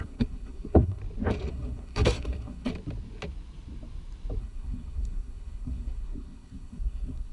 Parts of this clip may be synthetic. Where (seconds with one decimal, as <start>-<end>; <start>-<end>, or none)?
0.0-1.0; 1.5-2.7; 4.4-7.3